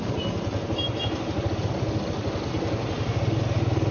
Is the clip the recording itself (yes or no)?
yes